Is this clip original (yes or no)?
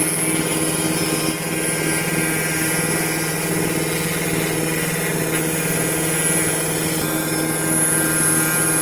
yes